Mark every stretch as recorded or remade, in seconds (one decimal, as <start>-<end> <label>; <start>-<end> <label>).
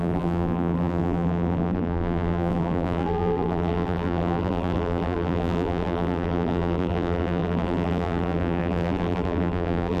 0.0-10.0 remade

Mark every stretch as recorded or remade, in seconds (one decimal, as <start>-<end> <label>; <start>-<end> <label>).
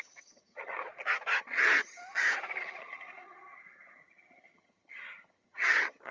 0.0-0.8 remade; 0.8-1.4 recorded; 1.4-2.0 remade; 2.0-2.6 recorded; 2.6-6.1 remade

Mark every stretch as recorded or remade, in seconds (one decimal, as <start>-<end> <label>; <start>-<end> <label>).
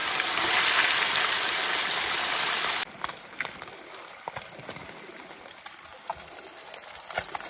0.0-7.5 recorded